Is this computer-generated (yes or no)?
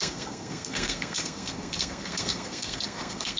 yes